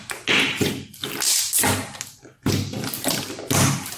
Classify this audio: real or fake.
real